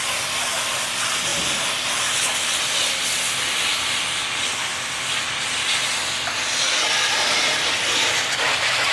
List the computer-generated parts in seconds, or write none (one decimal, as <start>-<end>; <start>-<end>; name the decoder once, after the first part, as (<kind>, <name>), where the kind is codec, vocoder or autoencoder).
none